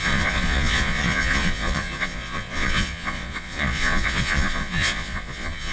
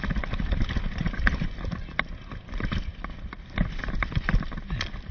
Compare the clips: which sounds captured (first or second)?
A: second